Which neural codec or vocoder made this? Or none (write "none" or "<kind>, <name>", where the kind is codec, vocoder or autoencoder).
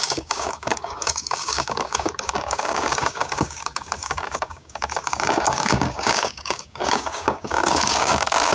codec, DAC